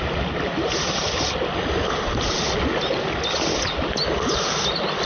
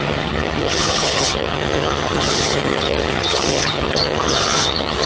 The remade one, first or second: second